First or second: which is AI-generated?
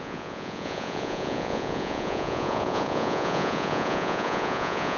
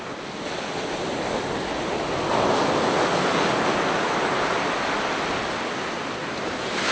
first